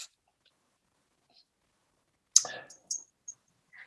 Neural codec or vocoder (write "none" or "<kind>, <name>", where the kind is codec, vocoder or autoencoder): none